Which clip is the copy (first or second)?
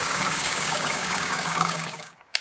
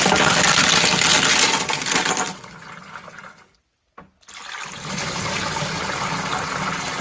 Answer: first